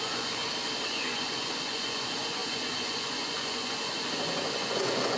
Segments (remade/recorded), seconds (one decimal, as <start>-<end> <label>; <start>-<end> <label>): 0.0-0.4 remade; 0.4-0.9 recorded; 0.9-5.2 remade